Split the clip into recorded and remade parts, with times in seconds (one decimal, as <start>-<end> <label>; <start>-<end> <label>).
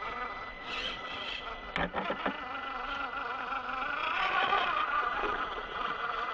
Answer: 0.0-0.5 recorded; 0.5-1.3 remade; 1.3-4.0 recorded; 4.0-6.3 remade